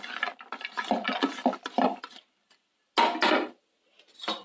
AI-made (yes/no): no